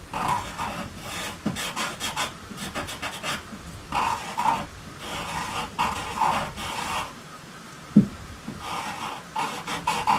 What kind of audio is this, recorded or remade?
recorded